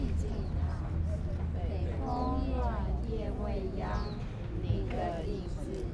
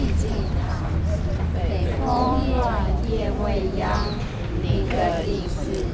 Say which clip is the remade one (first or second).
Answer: second